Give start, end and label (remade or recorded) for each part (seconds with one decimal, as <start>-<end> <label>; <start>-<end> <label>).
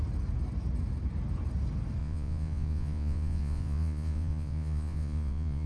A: 0.0-2.0 recorded; 2.0-5.7 remade